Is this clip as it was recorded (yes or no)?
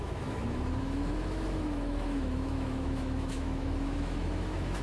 no